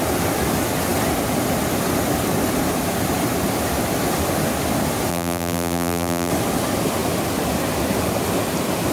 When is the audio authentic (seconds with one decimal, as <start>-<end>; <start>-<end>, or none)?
0.0-5.1; 6.3-8.9

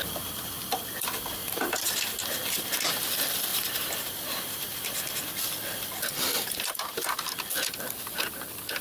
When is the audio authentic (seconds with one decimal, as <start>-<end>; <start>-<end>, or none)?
0.0-1.4; 2.0-3.5; 5.2-6.3; 7.0-8.8

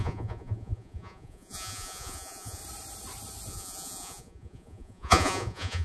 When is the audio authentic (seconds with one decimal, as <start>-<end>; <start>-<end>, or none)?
2.6-3.5

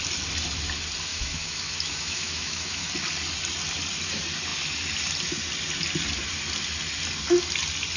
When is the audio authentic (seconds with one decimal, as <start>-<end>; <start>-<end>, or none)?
0.0-1.1; 2.9-8.0

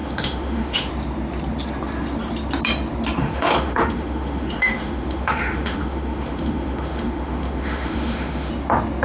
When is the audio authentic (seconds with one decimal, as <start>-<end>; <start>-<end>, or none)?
0.9-3.2; 8.5-9.0